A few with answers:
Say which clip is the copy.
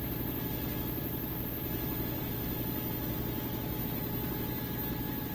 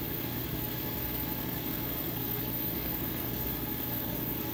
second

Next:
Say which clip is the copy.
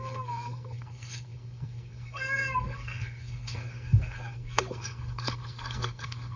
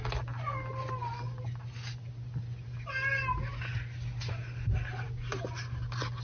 first